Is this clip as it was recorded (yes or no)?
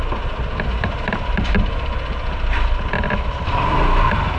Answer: no